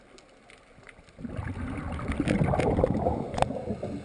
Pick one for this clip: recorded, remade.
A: recorded